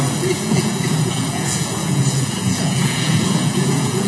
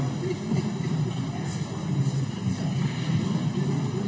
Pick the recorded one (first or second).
second